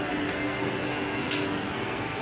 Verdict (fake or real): fake